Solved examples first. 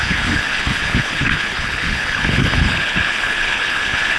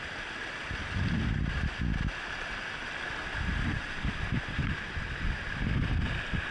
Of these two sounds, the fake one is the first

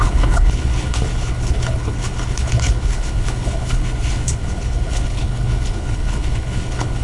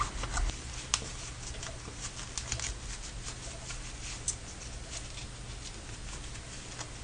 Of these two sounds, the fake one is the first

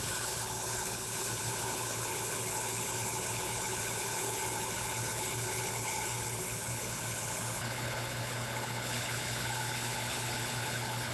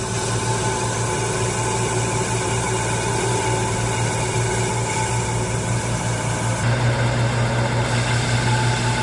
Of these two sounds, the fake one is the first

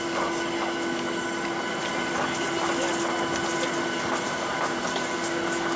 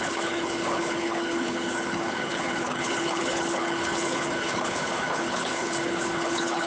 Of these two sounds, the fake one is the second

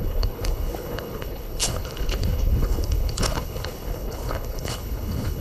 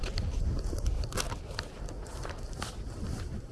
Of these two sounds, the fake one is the first